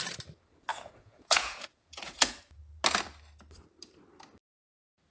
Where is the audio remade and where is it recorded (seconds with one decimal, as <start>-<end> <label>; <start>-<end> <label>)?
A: 0.0-0.7 recorded; 0.7-2.4 remade; 2.4-5.1 recorded